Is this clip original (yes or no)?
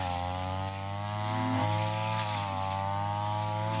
yes